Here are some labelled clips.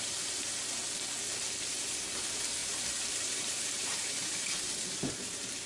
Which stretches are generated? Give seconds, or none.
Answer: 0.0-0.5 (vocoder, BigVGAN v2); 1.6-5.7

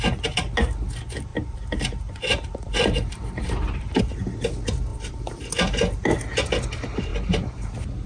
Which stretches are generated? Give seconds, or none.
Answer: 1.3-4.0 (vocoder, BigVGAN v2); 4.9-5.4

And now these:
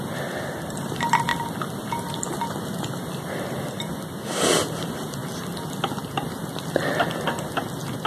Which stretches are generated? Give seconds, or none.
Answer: 0.0-1.3 (vocoder, BigVGAN v2); 1.9-5.2

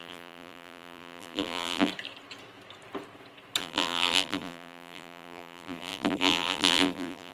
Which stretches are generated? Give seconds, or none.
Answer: 0.0-1.9 (vocoder, BigVGAN v2); 3.6-7.3

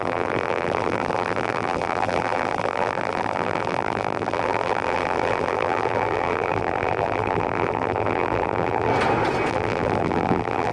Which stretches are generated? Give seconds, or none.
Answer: 0.0-8.9 (vocoder, BigVGAN v2); 9.5-10.7

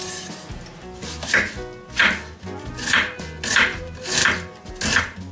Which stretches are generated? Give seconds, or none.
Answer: none

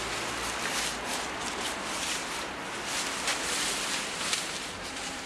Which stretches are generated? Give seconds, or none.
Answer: 1.4-2.6 (vocoder, BigVGAN v2); 3.3-5.3

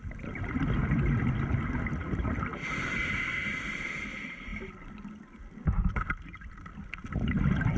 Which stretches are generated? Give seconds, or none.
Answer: 3.4-4.0 (vocoder, BigVGAN v2)